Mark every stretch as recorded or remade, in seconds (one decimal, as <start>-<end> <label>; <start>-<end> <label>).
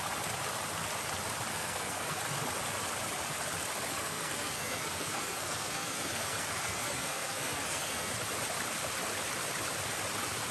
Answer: 0.0-1.5 recorded; 1.5-2.2 remade; 2.2-3.9 recorded; 3.9-8.1 remade; 8.1-10.5 recorded